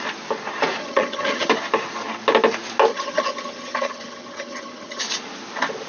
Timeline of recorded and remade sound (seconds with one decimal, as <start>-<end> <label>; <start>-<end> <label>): 0.0-0.8 recorded; 0.8-1.5 remade; 1.5-2.9 recorded; 2.9-5.0 remade; 5.0-5.9 recorded